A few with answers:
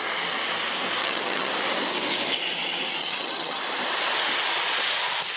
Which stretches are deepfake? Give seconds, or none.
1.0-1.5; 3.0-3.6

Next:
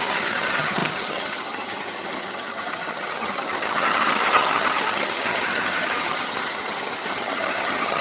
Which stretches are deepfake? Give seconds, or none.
0.0-8.0

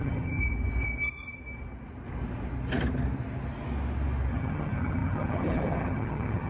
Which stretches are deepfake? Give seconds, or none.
0.0-0.4; 4.3-6.5

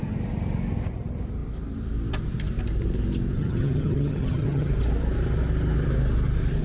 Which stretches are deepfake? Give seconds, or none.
3.4-4.7

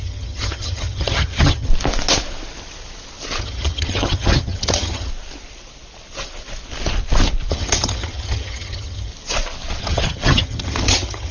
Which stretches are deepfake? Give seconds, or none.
0.0-1.7; 3.4-5.1; 7.5-9.1; 9.8-11.3